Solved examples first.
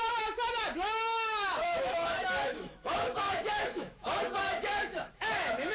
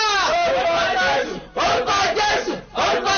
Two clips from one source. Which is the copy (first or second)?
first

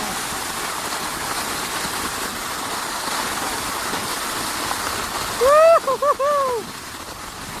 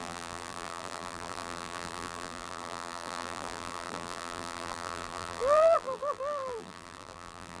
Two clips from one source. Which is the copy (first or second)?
second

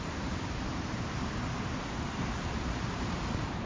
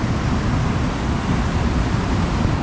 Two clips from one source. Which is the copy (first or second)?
first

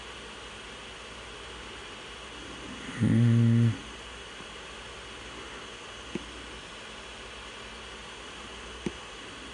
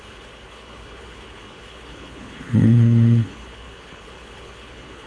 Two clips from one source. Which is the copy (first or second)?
second